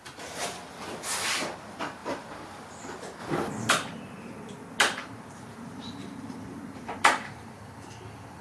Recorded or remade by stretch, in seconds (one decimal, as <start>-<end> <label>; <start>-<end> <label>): 0.0-2.0 recorded; 2.0-2.6 remade; 2.6-5.0 recorded; 5.0-7.0 remade; 7.0-8.4 recorded